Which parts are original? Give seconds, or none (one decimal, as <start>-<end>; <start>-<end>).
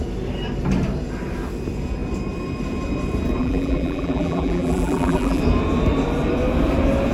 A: 0.0-3.4; 5.4-7.1